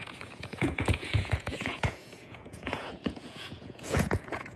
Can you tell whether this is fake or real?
fake